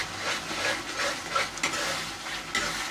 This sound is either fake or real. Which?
real